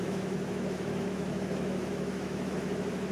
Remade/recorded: remade